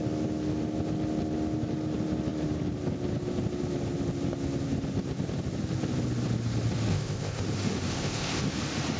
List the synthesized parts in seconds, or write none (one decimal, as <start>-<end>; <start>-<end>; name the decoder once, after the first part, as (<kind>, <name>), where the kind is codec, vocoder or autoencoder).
6.9-7.4 (codec, ZipCodec); 7.9-8.4